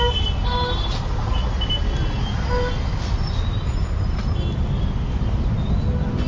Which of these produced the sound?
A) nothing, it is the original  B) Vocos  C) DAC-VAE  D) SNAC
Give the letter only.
A